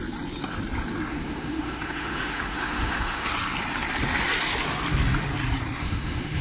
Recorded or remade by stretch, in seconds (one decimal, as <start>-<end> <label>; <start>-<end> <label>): 0.0-1.1 recorded; 1.1-3.3 remade; 3.3-5.8 recorded; 5.8-6.4 remade